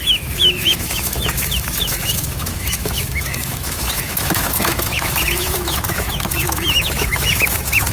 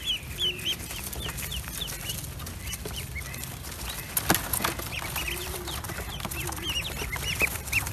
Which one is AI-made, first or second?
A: first